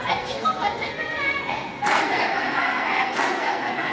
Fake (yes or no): yes